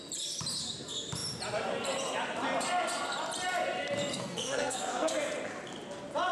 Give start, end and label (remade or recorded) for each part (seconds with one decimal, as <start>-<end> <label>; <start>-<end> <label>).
0.0-4.1 recorded; 4.1-5.1 remade; 5.1-6.3 recorded